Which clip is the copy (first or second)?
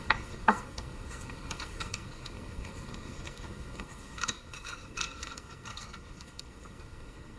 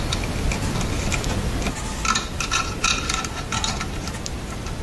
first